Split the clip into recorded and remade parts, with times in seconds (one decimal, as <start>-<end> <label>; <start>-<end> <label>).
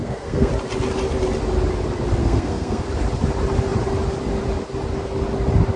0.0-0.5 remade; 0.5-2.2 recorded; 2.2-2.8 remade; 2.8-5.8 recorded